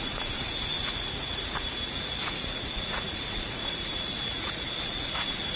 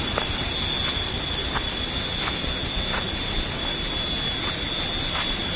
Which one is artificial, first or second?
first